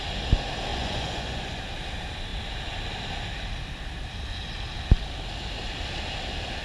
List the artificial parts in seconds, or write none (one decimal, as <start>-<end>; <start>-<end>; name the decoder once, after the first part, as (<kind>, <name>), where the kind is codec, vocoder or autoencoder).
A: 0.7-1.6 (vocoder, Vocos)